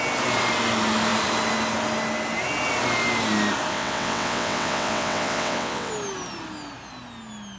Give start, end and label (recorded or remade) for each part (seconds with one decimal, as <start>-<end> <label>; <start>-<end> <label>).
0.0-3.7 recorded; 3.7-5.9 remade; 5.9-7.6 recorded